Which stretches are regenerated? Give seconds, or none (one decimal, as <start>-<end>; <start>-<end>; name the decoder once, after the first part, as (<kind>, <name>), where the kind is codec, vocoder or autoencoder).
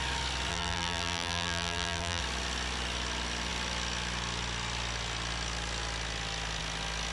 0.5-2.2 (vocoder, BigVGAN v2)